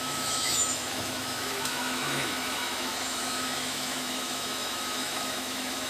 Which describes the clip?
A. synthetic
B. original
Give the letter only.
A